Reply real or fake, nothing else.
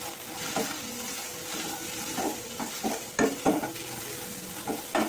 real